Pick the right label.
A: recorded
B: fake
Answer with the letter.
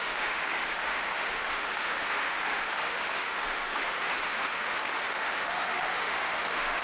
B